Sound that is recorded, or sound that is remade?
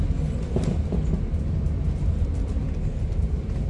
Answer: recorded